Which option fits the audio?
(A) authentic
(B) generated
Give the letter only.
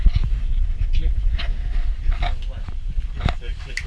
A